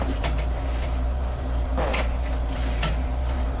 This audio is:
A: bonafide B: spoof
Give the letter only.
B